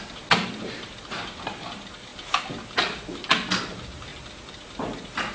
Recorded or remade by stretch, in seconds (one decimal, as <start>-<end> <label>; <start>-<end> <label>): 0.0-5.3 recorded